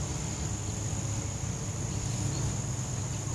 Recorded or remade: recorded